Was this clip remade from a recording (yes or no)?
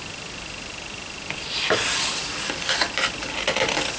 no